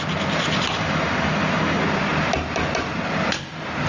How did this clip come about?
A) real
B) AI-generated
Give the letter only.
A